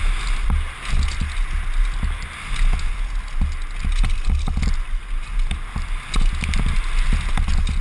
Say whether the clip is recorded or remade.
recorded